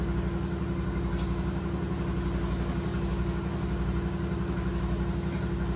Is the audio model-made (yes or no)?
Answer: no